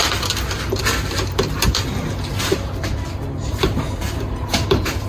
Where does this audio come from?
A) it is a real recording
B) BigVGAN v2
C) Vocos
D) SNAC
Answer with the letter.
A